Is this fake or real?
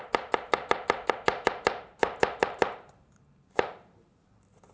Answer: fake